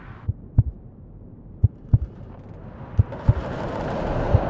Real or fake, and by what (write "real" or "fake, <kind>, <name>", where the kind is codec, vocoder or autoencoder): real